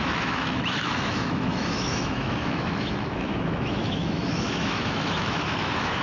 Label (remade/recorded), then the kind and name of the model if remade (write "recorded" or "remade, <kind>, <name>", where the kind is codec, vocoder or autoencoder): remade, autoencoder, DAC-VAE